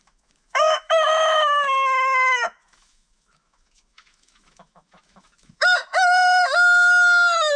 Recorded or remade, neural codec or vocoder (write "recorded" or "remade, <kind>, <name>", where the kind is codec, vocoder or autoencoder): remade, autoencoder, DAC-VAE